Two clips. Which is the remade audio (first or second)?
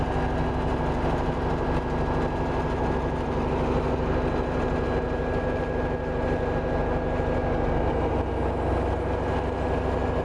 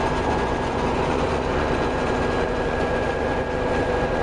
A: second